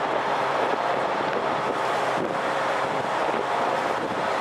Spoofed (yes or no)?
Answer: yes